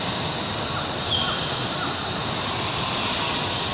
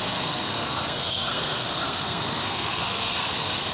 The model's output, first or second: second